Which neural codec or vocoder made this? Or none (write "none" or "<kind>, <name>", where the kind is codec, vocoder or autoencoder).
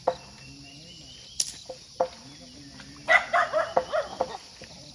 none